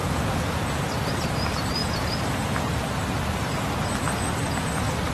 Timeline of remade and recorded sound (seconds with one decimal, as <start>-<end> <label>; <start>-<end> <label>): 0.0-1.1 remade; 1.1-1.8 recorded; 1.8-2.8 remade; 2.8-5.1 recorded